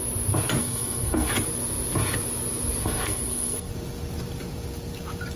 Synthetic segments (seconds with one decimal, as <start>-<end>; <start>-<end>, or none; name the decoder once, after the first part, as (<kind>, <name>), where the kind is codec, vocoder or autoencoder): 0.6-1.3 (codec, SNAC); 2.8-3.7